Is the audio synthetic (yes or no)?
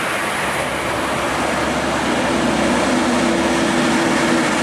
no